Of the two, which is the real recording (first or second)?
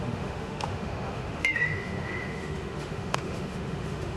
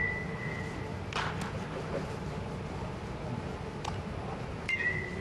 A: second